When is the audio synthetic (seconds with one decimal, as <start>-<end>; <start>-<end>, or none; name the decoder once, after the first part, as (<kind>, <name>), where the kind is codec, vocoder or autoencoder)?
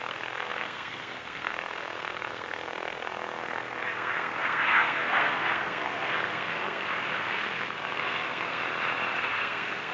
0.0-8.6 (codec, SNAC); 9.2-9.9